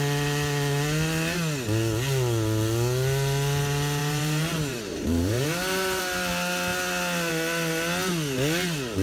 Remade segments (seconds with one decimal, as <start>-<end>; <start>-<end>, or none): 4.0-6.0